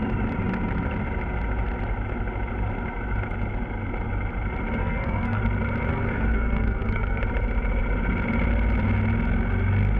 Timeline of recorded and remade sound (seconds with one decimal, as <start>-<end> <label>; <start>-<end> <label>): 0.0-4.8 recorded; 4.8-5.4 remade; 5.4-5.9 recorded; 5.9-7.2 remade; 7.2-10.0 recorded